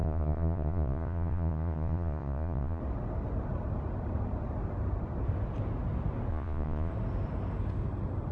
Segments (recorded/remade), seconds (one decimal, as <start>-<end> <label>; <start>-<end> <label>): 0.0-2.8 remade; 2.8-6.3 recorded; 6.3-6.9 remade; 6.9-8.3 recorded